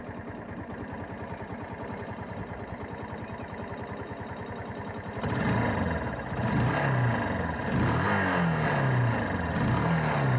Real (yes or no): yes